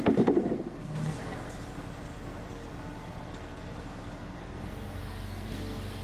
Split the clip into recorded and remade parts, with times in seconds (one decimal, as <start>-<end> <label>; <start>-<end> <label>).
0.0-6.0 remade

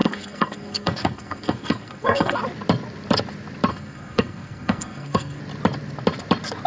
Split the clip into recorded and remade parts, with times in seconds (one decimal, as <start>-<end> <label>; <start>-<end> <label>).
0.0-2.4 remade; 2.4-3.7 recorded; 3.7-5.4 remade; 5.4-6.7 recorded

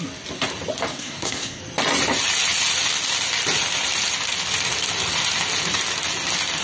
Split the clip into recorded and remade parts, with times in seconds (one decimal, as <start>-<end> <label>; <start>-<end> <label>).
0.0-0.9 recorded; 0.9-1.6 remade; 1.6-6.6 recorded

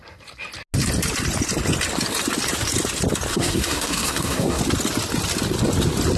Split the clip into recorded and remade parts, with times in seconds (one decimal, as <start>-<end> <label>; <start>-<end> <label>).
0.0-3.3 recorded; 3.3-4.6 remade; 4.6-6.2 recorded

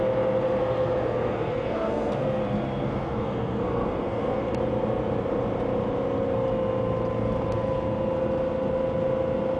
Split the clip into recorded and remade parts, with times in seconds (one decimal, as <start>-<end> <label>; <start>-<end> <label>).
0.0-0.6 recorded; 0.6-2.4 remade; 2.4-2.8 recorded; 2.8-4.5 remade; 4.5-9.6 recorded

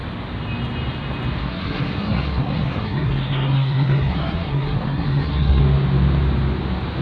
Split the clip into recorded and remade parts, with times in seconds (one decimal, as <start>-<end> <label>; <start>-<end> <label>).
0.0-1.4 recorded; 1.4-5.6 remade; 5.6-7.0 recorded